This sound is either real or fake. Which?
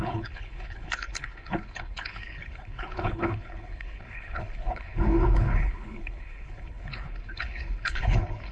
fake